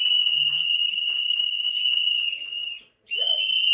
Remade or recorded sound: recorded